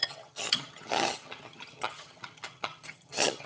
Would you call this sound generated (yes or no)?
yes